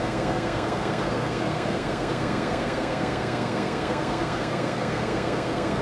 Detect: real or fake fake